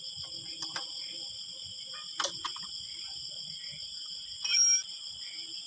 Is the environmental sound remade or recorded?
recorded